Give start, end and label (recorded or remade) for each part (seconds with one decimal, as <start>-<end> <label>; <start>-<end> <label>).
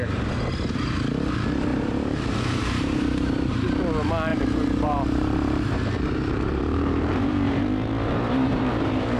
0.0-1.7 recorded; 1.7-3.7 remade; 3.7-4.3 recorded; 4.3-9.2 remade